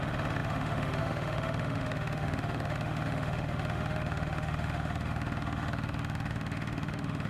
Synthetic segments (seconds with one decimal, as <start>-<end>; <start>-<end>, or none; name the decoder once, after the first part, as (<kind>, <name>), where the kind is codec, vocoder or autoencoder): 0.0-7.3 (autoencoder, DAC-VAE)